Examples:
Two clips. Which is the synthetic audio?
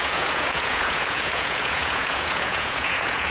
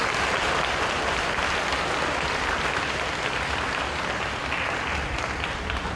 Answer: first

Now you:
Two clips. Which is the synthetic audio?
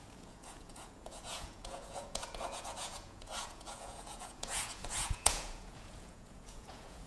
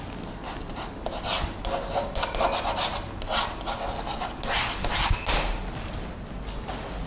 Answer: first